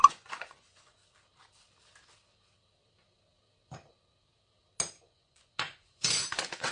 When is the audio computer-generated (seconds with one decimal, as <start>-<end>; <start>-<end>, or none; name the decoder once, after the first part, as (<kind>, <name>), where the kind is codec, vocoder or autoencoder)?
0.0-1.0 (vocoder, Vocos); 5.0-6.7